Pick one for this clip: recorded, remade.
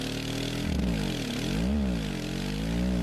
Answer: recorded